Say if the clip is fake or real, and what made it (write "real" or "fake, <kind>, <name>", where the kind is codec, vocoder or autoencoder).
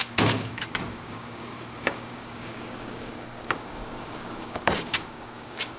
fake, codec, DAC